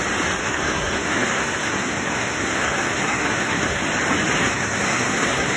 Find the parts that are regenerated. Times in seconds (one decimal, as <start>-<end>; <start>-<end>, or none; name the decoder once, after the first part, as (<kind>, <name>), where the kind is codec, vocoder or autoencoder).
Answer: 0.4-3.8 (codec, SNAC); 4.4-5.6